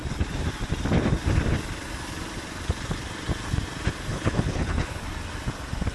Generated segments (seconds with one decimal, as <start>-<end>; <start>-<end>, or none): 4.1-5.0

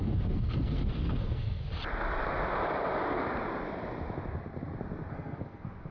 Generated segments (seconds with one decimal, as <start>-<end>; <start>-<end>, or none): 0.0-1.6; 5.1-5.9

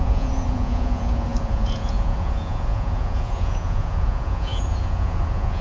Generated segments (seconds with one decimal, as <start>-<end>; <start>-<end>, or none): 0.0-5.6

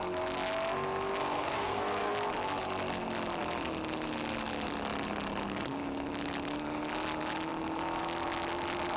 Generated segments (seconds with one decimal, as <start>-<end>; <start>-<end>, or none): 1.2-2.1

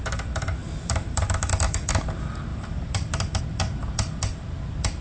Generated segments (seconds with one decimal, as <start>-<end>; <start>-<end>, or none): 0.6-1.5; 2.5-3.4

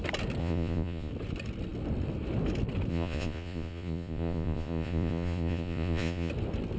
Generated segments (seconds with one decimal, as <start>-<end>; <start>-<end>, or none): 0.4-1.1; 2.9-6.3

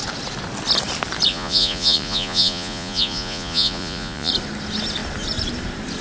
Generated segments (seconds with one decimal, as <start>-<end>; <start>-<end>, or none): 1.3-4.3